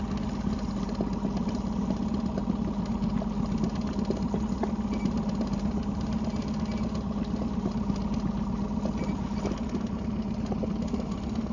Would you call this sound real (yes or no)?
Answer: yes